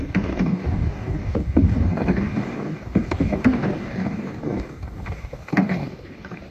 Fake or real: fake